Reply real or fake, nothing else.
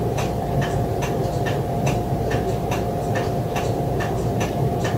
fake